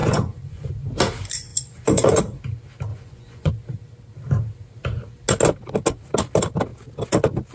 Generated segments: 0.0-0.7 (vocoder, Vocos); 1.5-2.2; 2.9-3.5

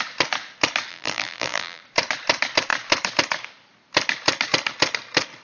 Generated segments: 0.9-1.8 (vocoder, BigVGAN v2)

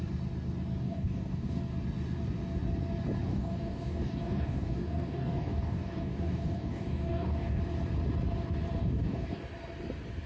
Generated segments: 0.8-1.6 (codec, DAC); 3.3-7.6; 8.8-9.4

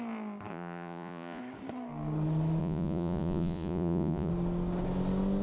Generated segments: 0.5-1.4 (vocoder, Vocos); 2.6-4.3

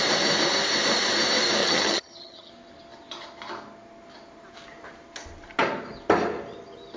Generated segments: 1.6-2.5 (vocoder, HiFi-GAN)